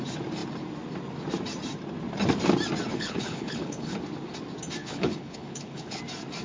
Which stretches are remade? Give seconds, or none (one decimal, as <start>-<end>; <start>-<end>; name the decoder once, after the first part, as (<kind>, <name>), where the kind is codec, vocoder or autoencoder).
2.9-3.9 (codec, HILCodec); 4.8-6.0